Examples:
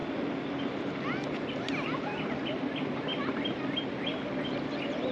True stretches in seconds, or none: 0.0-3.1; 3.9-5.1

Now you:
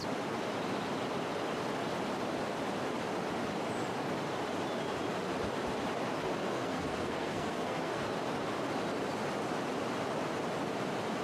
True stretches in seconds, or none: 0.0-6.5; 8.1-11.2

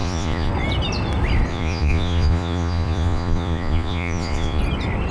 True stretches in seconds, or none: 0.5-1.5; 4.6-5.1

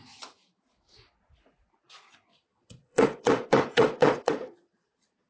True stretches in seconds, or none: 0.0-2.3